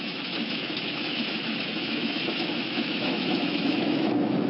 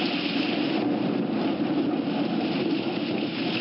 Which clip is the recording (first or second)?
second